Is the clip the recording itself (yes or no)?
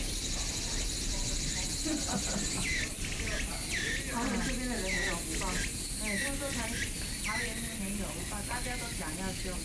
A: yes